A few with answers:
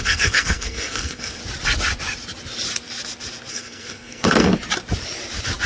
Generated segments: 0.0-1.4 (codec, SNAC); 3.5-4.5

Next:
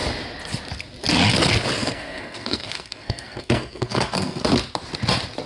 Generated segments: 1.8-4.4 (codec, SNAC)

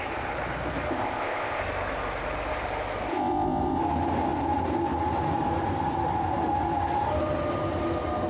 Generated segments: 0.9-1.6 (codec, ZipCodec); 3.1-3.8

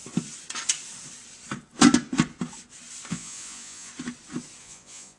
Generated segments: 3.1-3.9 (vocoder, Vocos); 4.6-5.2

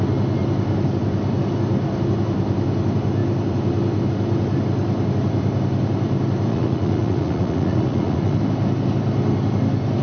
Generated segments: 6.5-8.4 (vocoder, Vocos)

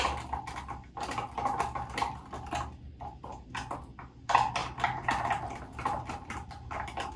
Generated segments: none

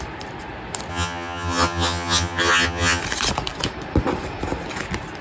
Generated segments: 0.9-3.0 (vocoder, HiFi-GAN)